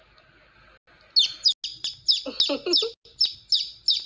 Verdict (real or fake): real